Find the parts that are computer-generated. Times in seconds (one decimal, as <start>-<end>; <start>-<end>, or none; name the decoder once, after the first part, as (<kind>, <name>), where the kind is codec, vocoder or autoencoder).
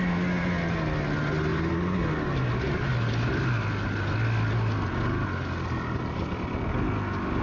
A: none